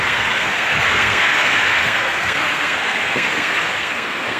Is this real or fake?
fake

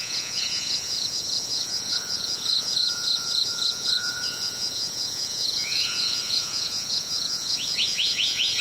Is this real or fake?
fake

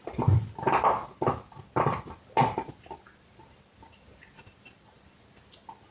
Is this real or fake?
real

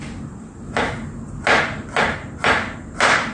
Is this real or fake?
real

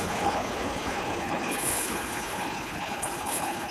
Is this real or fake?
fake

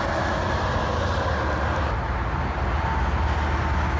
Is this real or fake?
real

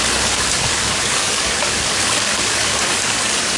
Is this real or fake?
fake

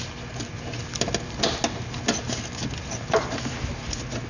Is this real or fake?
real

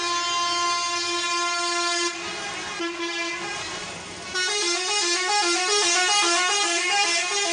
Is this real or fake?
real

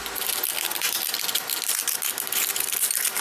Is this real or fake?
real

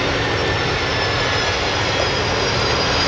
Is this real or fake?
real